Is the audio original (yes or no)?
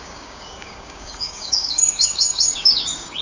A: no